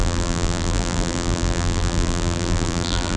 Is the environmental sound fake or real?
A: fake